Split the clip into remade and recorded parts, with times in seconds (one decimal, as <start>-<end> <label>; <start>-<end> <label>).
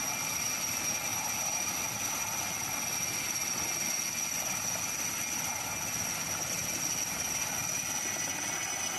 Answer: 0.0-1.1 recorded; 1.1-1.8 remade; 1.8-9.0 recorded